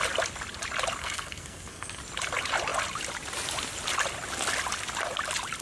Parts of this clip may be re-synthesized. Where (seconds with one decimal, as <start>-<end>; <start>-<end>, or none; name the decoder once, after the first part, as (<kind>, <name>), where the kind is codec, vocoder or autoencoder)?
1.0-2.0 (codec, SNAC)